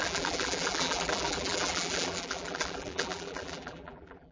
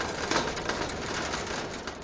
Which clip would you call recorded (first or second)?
second